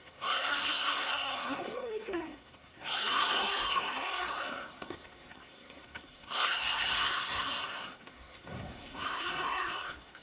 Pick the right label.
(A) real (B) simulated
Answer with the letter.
B